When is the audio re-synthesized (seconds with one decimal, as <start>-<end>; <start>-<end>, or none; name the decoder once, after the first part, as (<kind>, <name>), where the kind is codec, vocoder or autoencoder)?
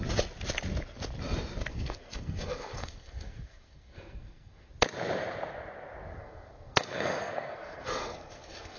1.7-4.7 (codec, SNAC); 6.2-8.8